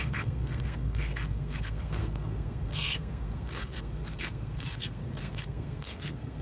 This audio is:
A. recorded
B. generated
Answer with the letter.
B